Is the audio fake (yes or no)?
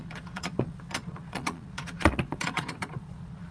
yes